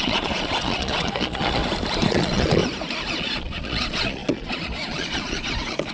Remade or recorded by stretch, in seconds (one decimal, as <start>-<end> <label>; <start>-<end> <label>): 0.0-1.6 remade; 1.6-2.1 recorded; 2.1-2.6 remade; 2.6-3.1 recorded; 3.1-5.9 remade